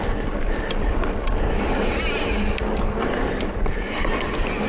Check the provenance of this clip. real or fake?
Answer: real